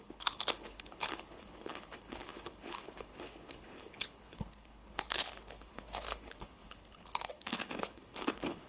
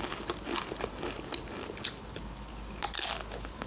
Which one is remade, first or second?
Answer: first